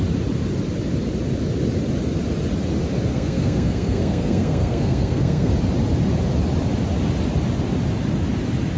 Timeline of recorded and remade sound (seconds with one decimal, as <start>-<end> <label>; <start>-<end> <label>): 0.0-3.1 recorded; 3.1-5.5 remade; 5.5-8.8 recorded